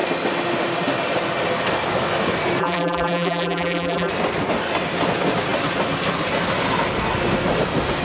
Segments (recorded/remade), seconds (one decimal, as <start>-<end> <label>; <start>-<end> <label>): 0.0-2.6 recorded; 2.6-4.1 remade; 4.1-8.0 recorded

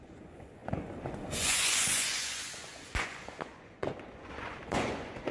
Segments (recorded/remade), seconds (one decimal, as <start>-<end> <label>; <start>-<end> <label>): 0.0-5.3 remade

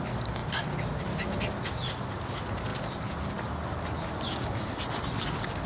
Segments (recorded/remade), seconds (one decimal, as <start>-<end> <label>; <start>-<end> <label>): 0.0-5.7 recorded

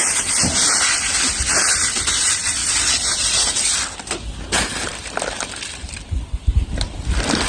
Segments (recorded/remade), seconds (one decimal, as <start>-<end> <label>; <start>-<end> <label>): 0.0-7.5 recorded

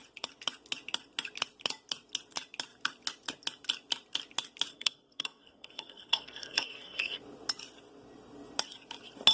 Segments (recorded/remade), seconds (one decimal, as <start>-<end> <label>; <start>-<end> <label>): 0.0-4.7 recorded; 4.7-7.2 remade; 7.2-9.3 recorded

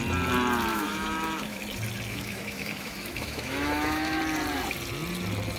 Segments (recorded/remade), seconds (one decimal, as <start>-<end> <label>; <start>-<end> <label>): 0.0-0.7 recorded; 0.7-1.6 remade; 1.6-2.1 recorded; 2.1-4.2 remade; 4.2-5.6 recorded

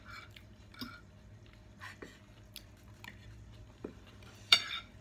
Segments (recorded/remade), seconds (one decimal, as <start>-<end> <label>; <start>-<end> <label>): 0.0-0.7 remade; 0.7-3.6 recorded; 3.6-5.0 remade